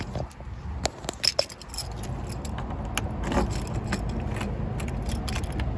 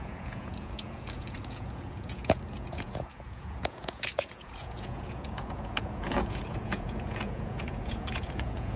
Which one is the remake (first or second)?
second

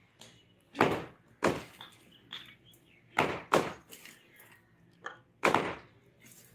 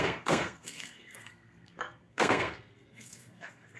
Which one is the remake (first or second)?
second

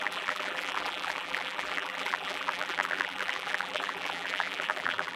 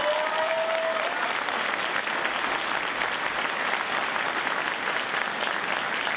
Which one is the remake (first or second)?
first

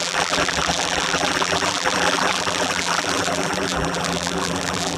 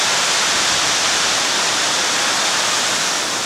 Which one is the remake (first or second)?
first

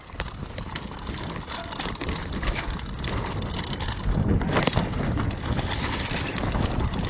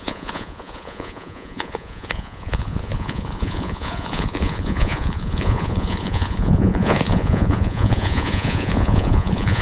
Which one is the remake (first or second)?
second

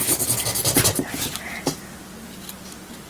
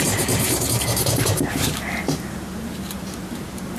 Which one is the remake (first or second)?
second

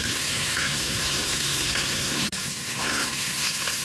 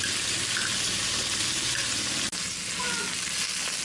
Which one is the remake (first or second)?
first